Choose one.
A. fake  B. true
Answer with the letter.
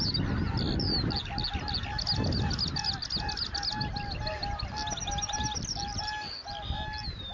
B